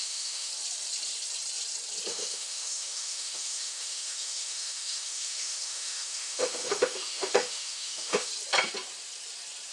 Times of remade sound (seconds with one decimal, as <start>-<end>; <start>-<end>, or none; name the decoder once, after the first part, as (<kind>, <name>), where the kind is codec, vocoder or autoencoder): 0.0-0.5 (autoencoder, DAC-VAE); 2.1-8.3